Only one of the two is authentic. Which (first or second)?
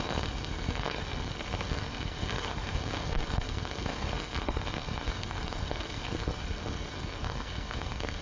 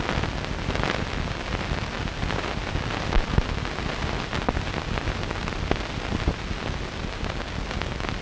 second